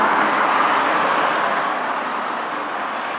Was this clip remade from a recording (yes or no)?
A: no